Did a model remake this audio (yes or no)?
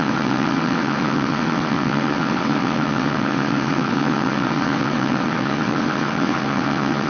yes